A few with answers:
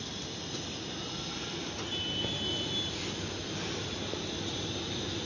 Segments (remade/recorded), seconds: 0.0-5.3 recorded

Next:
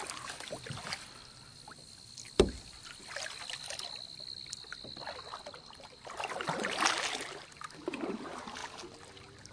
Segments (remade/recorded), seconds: 0.0-9.5 recorded

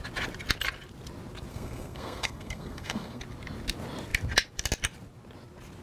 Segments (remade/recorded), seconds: 0.0-1.5 recorded; 1.5-3.2 remade; 3.2-5.8 recorded

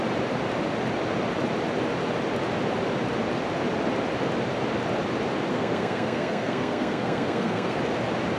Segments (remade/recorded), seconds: 0.0-5.5 recorded; 5.5-7.8 remade; 7.8-8.4 recorded